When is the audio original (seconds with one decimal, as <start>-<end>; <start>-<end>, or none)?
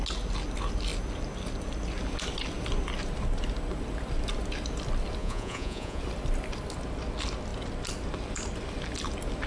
0.0-5.2; 6.0-9.5